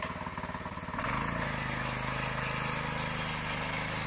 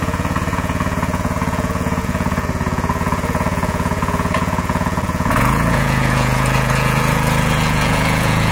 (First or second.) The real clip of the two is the first